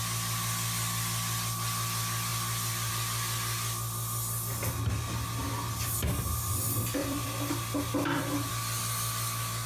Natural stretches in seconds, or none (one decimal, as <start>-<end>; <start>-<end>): 0.0-2.3; 2.9-7.0; 8.5-9.7